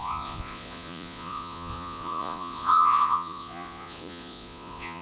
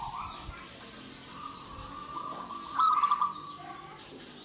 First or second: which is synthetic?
first